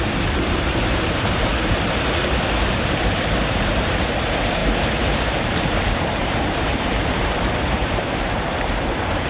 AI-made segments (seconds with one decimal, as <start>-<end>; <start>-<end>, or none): 0.0-1.5; 3.4-9.3